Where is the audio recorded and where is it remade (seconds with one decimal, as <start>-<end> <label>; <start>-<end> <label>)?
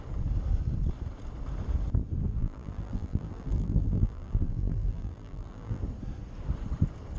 0.0-2.3 recorded; 2.3-5.8 remade; 5.8-7.2 recorded